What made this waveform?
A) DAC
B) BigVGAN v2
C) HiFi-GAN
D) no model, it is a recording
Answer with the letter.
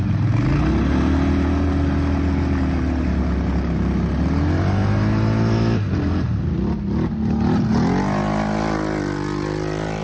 D